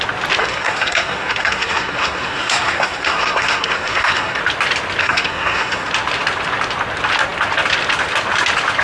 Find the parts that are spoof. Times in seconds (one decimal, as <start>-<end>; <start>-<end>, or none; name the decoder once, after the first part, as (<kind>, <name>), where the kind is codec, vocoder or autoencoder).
0.4-4.4 (codec, SNAC); 5.0-5.9